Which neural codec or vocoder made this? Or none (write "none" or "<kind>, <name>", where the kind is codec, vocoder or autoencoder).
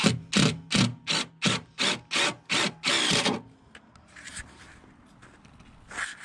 none